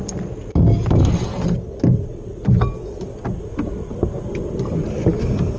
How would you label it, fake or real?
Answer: real